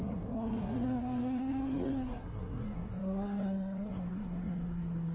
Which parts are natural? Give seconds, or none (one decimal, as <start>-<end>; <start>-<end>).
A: none